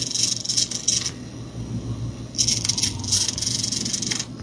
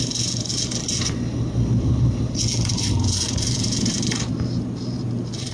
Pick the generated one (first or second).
second